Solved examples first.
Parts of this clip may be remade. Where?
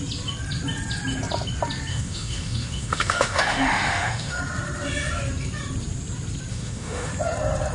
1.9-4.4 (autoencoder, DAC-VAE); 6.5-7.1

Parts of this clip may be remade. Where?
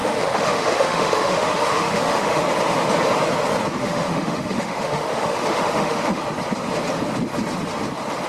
0.0-2.4 (autoencoder, DAC-VAE); 3.8-6.2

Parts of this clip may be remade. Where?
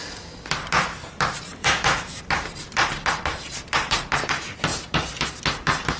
1.6-2.2 (autoencoder, DAC-VAE)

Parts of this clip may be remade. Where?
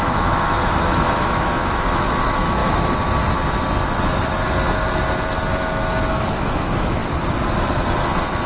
0.0-2.6 (autoencoder, DAC-VAE); 6.1-7.0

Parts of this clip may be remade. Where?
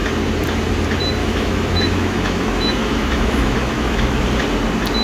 1.2-4.2 (autoencoder, DAC-VAE)